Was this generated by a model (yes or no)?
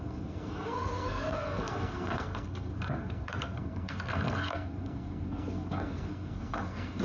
yes